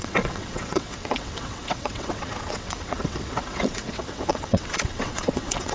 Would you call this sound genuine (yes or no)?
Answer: no